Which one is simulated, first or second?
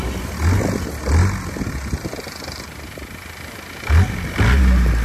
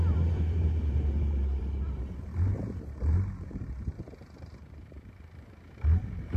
second